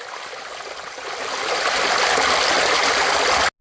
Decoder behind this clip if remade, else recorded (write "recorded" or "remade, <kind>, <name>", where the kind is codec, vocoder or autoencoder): recorded